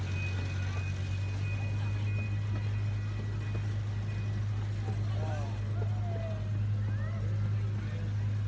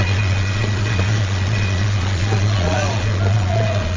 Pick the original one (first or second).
first